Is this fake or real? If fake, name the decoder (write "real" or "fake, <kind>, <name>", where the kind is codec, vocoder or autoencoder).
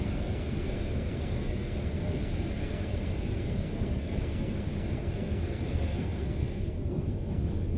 fake, codec, SNAC